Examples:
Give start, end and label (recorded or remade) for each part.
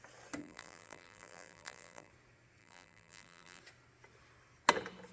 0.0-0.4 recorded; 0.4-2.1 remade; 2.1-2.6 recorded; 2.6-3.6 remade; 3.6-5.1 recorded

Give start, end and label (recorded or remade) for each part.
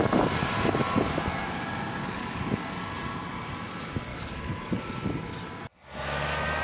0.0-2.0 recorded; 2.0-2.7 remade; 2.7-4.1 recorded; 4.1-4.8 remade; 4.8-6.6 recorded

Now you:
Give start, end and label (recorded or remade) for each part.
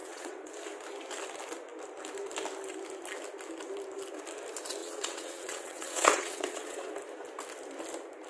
0.0-0.5 remade; 0.5-4.8 recorded; 4.8-6.9 remade; 6.9-8.3 recorded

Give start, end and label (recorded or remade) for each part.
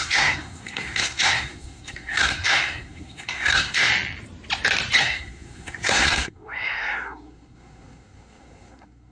0.0-3.9 remade; 3.9-5.0 recorded; 5.0-9.1 remade